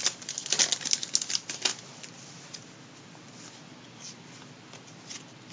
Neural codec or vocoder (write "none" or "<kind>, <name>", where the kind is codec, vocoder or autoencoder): none